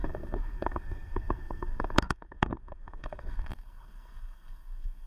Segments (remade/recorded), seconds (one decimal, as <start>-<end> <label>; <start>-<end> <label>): 0.0-5.1 remade